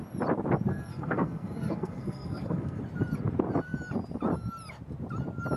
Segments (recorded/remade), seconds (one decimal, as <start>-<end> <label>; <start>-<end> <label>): 0.0-0.7 recorded; 0.7-2.8 remade; 2.8-5.6 recorded